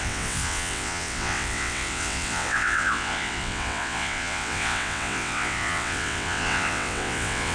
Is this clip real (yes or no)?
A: no